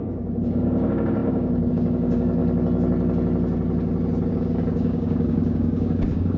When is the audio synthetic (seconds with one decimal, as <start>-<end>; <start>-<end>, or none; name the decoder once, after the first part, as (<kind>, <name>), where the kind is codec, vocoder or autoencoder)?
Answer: 0.0-2.4 (codec, DAC); 4.3-6.4